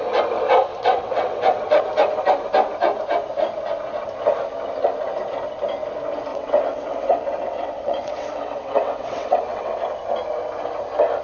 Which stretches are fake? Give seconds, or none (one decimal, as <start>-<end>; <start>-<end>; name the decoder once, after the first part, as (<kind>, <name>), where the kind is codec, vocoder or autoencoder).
0.7-1.8 (vocoder, WaveNeXt); 6.3-9.8